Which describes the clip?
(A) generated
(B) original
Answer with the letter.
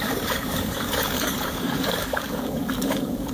A